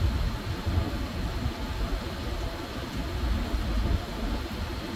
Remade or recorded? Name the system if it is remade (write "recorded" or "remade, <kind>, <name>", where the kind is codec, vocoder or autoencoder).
recorded